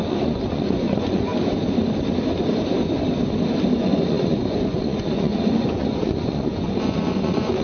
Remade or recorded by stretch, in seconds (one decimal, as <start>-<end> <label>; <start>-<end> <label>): 0.0-1.3 remade; 1.3-3.8 recorded; 3.8-7.6 remade